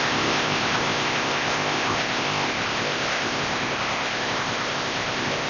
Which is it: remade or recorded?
remade